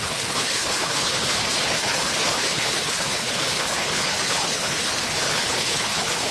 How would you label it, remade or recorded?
remade